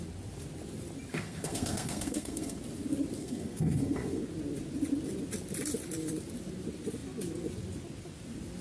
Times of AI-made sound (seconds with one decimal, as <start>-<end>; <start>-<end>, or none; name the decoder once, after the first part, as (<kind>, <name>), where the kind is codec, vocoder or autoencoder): 1.1-2.6 (codec, SNAC); 3.2-4.2